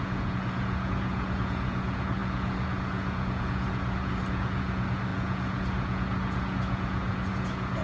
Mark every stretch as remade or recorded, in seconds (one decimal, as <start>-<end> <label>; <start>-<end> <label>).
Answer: 0.0-7.8 remade